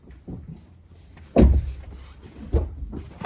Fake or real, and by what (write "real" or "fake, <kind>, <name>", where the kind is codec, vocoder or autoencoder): real